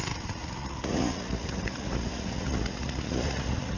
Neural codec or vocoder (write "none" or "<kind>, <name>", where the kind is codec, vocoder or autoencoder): vocoder, Vocos